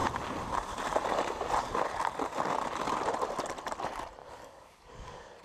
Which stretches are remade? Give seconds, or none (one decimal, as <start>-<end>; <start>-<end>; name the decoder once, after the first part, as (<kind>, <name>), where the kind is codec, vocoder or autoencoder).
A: 4.2-5.4 (codec, DAC)